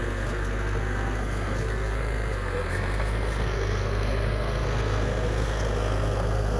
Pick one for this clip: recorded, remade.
remade